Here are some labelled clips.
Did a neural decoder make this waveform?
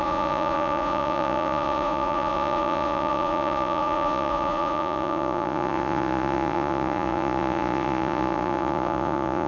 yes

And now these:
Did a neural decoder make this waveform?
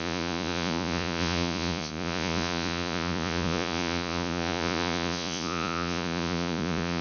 yes